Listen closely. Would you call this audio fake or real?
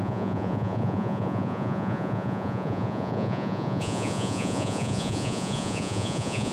fake